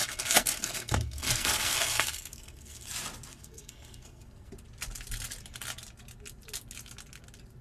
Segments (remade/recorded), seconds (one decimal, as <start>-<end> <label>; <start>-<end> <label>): 0.0-2.9 remade; 2.9-3.3 recorded; 3.3-4.5 remade; 4.5-7.6 recorded